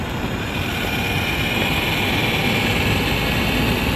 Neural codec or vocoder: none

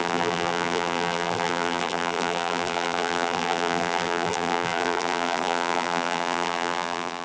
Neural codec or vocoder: vocoder, BigVGAN v2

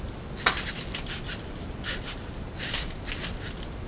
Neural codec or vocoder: vocoder, BigVGAN v2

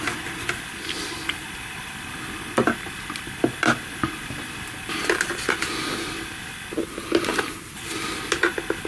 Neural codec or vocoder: none